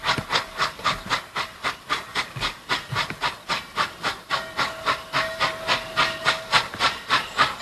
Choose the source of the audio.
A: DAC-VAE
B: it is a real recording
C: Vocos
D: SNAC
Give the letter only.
B